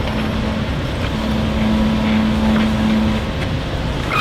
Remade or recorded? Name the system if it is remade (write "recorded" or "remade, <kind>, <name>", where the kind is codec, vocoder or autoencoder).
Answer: recorded